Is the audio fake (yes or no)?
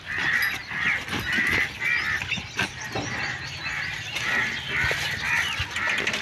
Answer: no